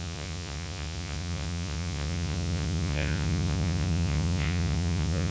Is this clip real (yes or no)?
no